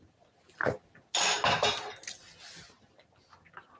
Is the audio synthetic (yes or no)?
no